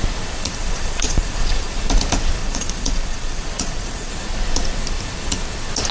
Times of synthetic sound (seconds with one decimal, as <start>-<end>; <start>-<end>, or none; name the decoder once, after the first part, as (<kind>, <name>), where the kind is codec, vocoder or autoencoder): 0.6-1.8 (vocoder, Vocos); 2.4-4.1